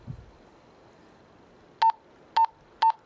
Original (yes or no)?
yes